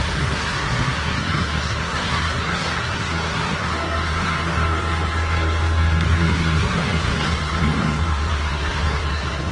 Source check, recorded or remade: remade